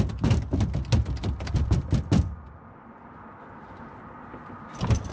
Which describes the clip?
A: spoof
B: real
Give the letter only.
B